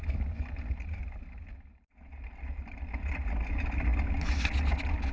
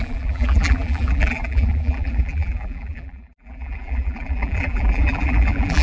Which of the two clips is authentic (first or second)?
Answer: first